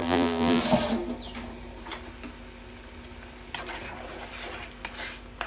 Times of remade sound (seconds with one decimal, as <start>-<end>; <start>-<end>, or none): 0.0-0.6